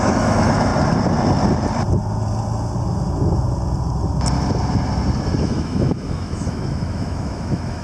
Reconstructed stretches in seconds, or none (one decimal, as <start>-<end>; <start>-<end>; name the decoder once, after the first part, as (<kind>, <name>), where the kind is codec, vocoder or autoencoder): 0.0-0.7 (autoencoder, DAC-VAE); 5.4-7.8